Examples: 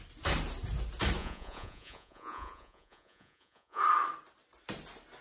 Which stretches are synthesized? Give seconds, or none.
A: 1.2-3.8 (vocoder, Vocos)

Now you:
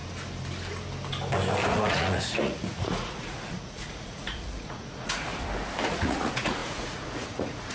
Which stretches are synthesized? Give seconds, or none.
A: 1.7-5.3 (vocoder, Vocos); 5.8-7.7